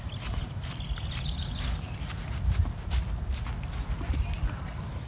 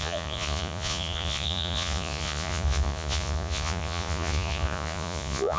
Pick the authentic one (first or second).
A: first